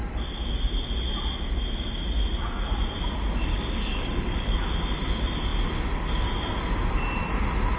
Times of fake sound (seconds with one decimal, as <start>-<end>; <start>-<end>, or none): 3.5-4.7